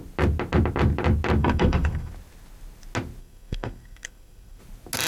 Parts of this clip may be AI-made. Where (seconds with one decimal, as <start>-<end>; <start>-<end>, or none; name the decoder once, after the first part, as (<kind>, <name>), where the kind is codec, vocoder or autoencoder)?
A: 1.4-2.1 (codec, SNAC); 3.2-4.6